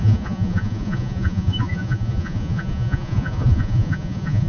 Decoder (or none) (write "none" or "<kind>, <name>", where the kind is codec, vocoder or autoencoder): vocoder, Vocos